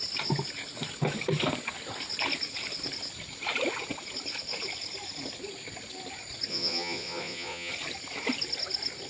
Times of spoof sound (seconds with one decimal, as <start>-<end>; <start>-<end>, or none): 6.5-7.7